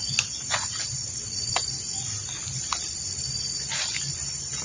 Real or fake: fake